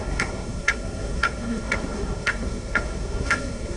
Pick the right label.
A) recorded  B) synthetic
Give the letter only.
B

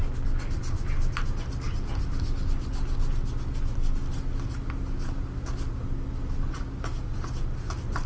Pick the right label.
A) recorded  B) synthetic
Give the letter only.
A